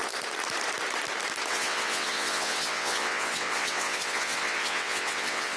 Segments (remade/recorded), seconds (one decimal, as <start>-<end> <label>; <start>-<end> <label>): 0.0-1.5 recorded; 1.5-5.6 remade